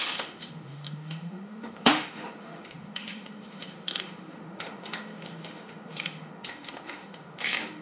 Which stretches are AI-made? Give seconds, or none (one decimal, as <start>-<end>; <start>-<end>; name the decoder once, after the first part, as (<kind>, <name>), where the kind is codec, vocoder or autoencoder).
0.0-7.8 (autoencoder, DAC-VAE)